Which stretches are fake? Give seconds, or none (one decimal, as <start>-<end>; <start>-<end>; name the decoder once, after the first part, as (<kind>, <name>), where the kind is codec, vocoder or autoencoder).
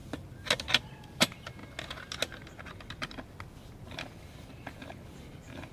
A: none